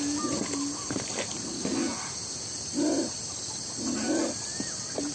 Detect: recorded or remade recorded